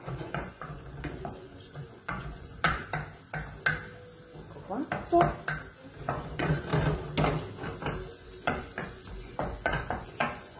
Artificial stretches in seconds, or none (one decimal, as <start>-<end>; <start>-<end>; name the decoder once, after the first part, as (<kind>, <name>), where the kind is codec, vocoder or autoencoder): 0.0-2.8 (vocoder, Vocos); 6.0-6.7; 8.1-10.6